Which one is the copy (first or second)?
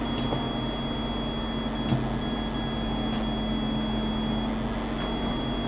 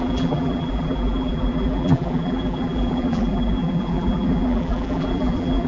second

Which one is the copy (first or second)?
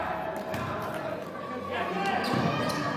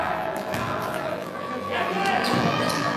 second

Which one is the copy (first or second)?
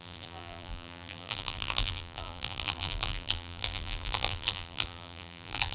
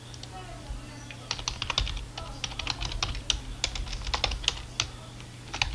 first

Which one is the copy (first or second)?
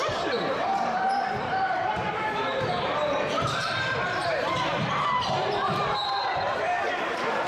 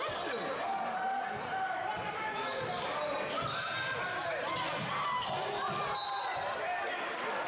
first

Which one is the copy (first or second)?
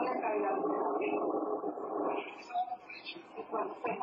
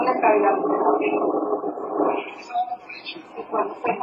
first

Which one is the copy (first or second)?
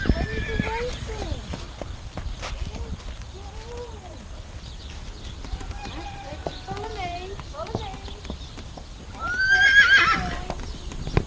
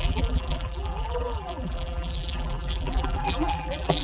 second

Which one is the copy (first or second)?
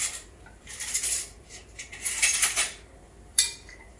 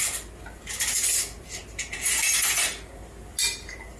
first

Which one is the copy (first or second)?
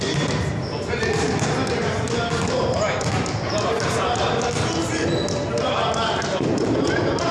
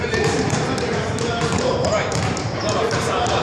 second